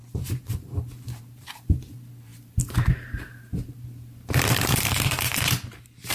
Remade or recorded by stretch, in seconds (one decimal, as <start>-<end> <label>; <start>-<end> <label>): 0.0-6.1 remade